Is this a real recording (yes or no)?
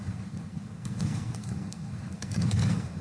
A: no